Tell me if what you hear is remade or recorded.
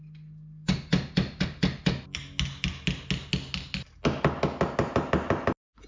recorded